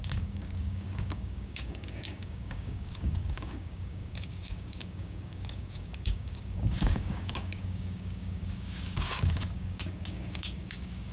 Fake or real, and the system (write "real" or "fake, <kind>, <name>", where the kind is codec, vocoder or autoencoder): fake, codec, DAC